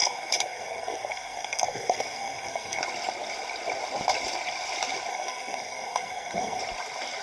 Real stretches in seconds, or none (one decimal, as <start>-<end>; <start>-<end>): 2.8-5.1; 6.6-7.2